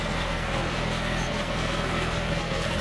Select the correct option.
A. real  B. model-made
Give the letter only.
B